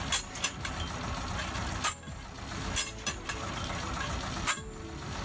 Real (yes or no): yes